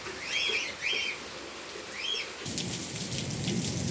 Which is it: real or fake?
real